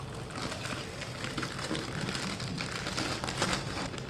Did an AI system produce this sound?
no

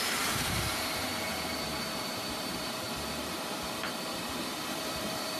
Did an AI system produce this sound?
yes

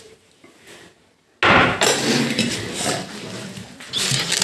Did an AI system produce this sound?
no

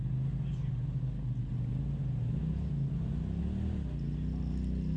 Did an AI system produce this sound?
no